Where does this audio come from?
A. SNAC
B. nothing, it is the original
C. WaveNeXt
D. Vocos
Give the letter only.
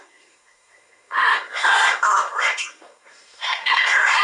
A